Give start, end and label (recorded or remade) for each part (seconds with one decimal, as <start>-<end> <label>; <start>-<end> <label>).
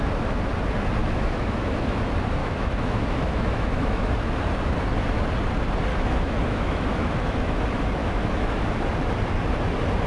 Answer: 0.0-1.0 recorded; 1.0-2.0 remade; 2.0-2.4 recorded; 2.4-4.1 remade; 4.1-5.9 recorded; 5.9-7.6 remade; 7.6-8.0 recorded; 8.0-8.9 remade; 8.9-10.1 recorded